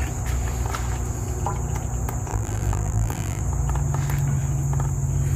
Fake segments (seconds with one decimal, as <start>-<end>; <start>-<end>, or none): 2.3-3.4